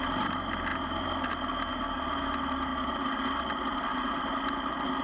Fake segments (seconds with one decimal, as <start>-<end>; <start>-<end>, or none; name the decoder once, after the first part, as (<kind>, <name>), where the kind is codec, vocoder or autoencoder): none